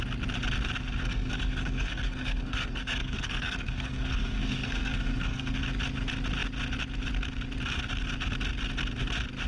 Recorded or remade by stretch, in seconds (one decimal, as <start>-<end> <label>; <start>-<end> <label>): 0.0-1.0 recorded; 1.0-5.6 remade; 5.6-9.5 recorded